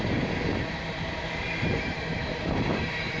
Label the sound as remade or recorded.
remade